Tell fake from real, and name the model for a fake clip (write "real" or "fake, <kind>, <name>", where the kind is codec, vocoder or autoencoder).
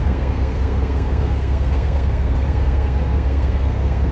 fake, codec, SNAC